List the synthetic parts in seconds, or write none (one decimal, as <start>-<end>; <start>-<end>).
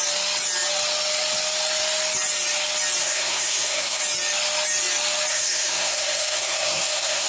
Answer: 3.0-4.0; 5.3-7.3